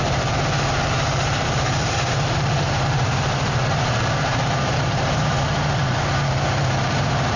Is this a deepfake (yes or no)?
yes